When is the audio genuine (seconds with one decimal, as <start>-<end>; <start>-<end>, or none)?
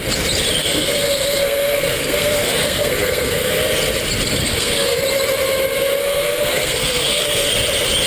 0.0-0.6; 3.6-4.4; 5.0-6.0; 7.5-8.1